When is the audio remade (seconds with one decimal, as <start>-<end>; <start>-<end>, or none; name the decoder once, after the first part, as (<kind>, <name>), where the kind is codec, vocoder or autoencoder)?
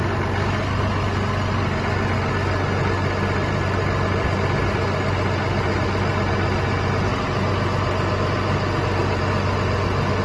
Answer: none